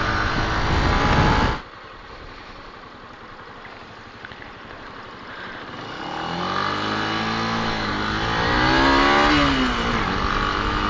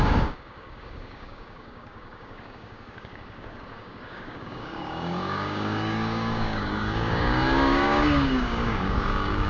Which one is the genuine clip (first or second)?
first